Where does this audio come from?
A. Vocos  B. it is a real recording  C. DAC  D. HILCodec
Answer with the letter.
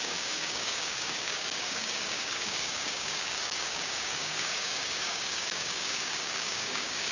C